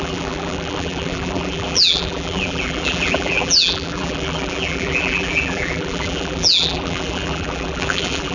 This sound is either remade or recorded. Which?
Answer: remade